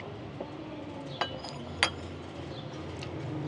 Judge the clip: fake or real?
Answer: real